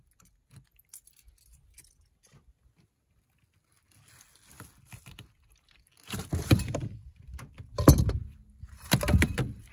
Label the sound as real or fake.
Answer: real